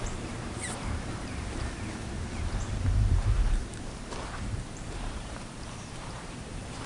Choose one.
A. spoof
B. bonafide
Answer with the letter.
A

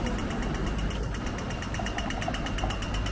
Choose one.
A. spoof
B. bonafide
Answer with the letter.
B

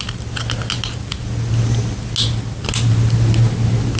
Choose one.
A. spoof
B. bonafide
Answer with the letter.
B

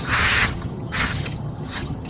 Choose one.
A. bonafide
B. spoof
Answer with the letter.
B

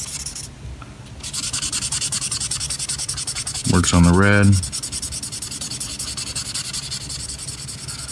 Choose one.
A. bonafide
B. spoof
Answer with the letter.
A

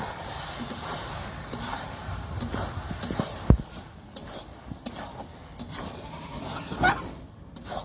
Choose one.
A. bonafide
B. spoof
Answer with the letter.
A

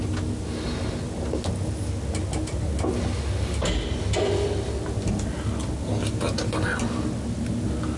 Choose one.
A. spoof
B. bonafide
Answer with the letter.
B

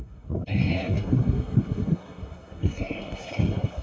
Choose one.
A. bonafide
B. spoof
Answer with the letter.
B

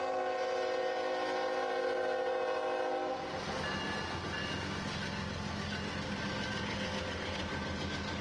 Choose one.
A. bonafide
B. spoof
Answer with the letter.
A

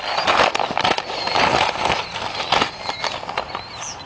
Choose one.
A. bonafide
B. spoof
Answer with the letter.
A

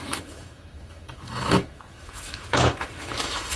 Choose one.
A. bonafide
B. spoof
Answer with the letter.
B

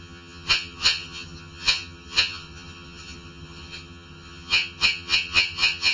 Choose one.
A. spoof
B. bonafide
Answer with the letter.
A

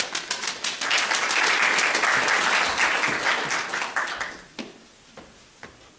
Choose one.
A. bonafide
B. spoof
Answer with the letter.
A